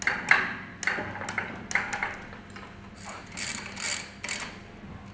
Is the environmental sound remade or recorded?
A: recorded